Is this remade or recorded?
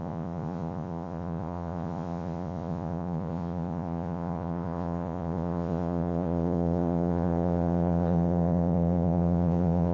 remade